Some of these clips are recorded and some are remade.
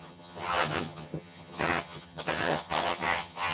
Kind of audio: remade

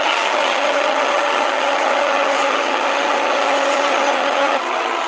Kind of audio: remade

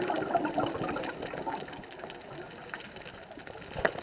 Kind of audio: recorded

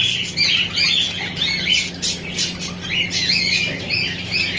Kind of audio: recorded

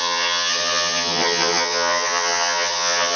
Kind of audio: remade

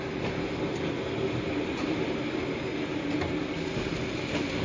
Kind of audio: recorded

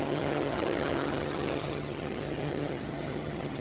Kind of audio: remade